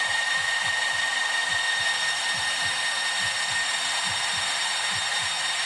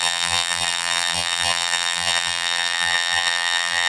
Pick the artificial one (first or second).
second